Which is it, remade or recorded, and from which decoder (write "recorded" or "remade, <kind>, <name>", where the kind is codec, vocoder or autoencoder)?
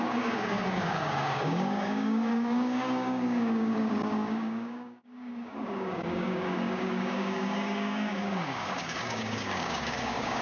remade, codec, DAC